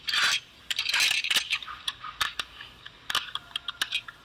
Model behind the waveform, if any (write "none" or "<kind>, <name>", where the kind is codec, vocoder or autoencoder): none